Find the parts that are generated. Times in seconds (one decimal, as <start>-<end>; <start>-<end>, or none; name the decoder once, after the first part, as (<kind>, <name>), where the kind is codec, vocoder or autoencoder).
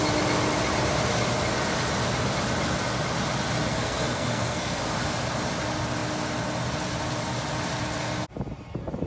3.7-4.8 (codec, SNAC)